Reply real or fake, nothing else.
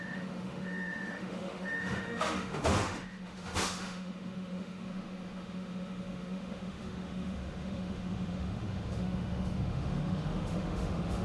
fake